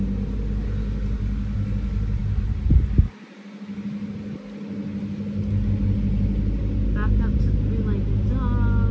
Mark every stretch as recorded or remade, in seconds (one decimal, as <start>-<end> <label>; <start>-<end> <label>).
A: 0.0-8.9 recorded